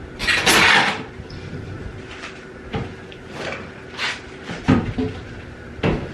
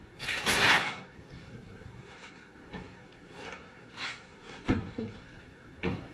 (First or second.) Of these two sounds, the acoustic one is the first